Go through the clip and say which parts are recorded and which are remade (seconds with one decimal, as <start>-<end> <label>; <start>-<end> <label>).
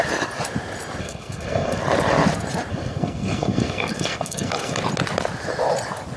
0.0-1.0 recorded; 1.0-1.8 remade; 1.8-2.7 recorded; 2.7-4.8 remade; 4.8-6.2 recorded